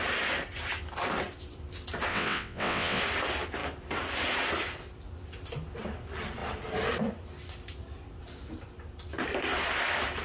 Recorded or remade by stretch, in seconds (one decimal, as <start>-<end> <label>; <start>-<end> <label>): 0.0-2.1 recorded; 2.1-3.0 remade; 3.0-10.2 recorded